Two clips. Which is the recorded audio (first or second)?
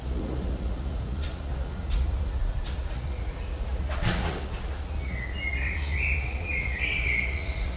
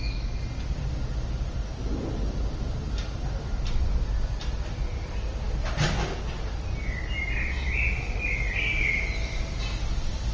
second